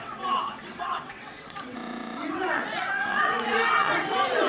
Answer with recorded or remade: remade